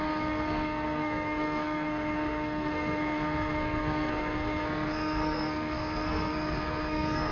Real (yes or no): no